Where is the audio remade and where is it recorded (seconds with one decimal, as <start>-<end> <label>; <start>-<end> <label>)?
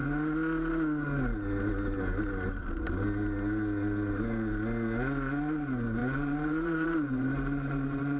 0.0-6.0 recorded; 6.0-8.2 remade